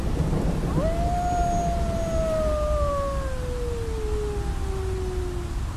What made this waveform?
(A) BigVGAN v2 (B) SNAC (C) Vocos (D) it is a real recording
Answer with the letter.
D